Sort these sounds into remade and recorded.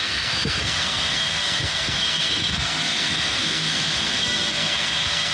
remade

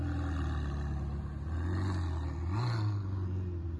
recorded